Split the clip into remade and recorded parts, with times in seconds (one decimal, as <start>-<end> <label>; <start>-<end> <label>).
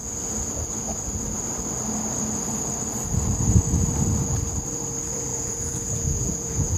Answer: 0.0-5.3 recorded; 5.3-6.8 remade